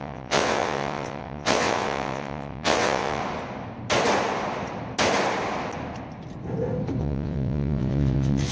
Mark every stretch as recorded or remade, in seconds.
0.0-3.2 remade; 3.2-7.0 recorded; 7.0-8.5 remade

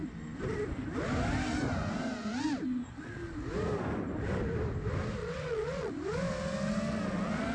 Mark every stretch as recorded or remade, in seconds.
0.0-5.2 recorded; 5.2-5.9 remade; 5.9-7.5 recorded

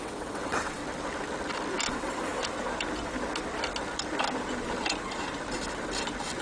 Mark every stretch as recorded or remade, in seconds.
0.0-0.8 remade; 0.8-1.9 recorded; 1.9-2.4 remade; 2.4-6.4 recorded

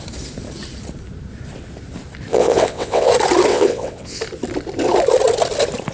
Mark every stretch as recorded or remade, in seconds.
0.0-2.3 recorded; 2.3-3.1 remade; 3.1-3.5 recorded; 3.5-4.2 remade; 4.2-5.9 recorded

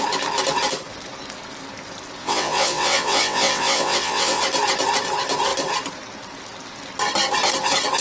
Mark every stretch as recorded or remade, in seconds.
0.0-2.2 recorded; 2.2-4.4 remade; 4.4-8.0 recorded

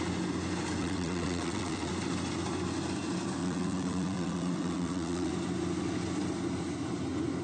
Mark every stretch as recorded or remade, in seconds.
0.0-0.8 recorded; 0.8-1.9 remade; 1.9-3.4 recorded; 3.4-5.3 remade; 5.3-7.4 recorded

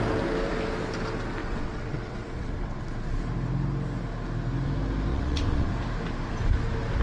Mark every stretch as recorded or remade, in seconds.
0.0-1.4 recorded; 1.4-2.8 remade; 2.8-5.1 recorded; 5.1-5.7 remade; 5.7-7.0 recorded